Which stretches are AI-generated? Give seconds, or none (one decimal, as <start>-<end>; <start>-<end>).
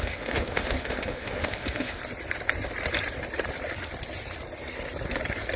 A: 0.0-2.0